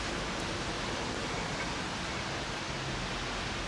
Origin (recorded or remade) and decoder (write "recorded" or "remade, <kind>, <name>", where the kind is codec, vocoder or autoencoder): recorded